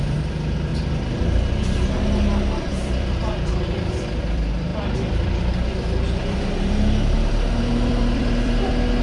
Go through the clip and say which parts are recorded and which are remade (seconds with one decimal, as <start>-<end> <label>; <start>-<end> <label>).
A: 0.0-0.7 remade; 0.7-2.6 recorded; 2.6-9.0 remade